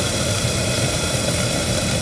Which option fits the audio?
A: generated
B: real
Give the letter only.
A